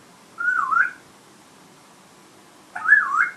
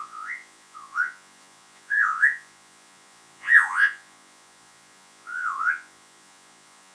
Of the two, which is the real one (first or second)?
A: first